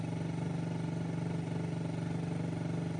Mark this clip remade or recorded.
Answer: recorded